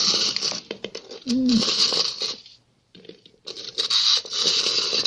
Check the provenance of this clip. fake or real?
fake